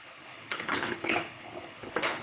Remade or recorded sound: remade